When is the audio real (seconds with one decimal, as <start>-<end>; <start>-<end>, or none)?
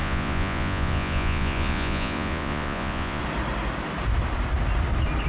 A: 3.2-5.3